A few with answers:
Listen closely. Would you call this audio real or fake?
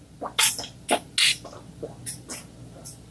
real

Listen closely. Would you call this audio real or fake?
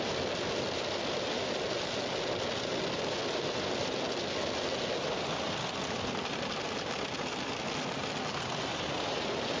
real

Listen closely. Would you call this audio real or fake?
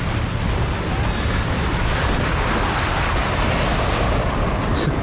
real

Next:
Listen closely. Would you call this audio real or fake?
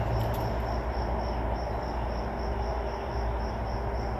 real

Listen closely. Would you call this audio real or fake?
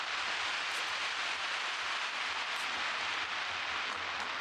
real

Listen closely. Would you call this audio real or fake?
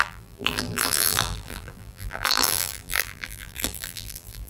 fake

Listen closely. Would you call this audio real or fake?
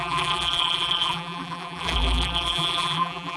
fake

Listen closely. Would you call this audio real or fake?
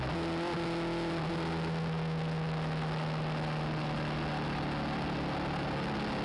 real